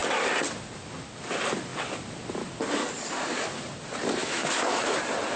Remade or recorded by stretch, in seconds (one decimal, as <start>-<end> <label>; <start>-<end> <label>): 0.0-4.2 recorded; 4.2-4.9 remade; 4.9-5.4 recorded